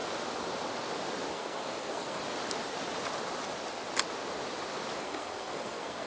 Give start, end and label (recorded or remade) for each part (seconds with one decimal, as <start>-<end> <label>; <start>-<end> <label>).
0.0-1.3 recorded; 1.3-2.2 remade; 2.2-5.0 recorded; 5.0-6.1 remade